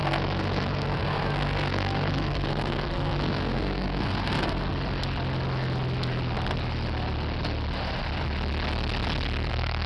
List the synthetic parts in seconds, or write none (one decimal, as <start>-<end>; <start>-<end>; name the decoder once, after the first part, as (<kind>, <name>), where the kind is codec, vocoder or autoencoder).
0.0-4.7 (codec, SNAC); 9.5-9.9